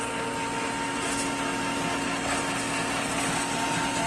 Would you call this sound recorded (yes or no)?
yes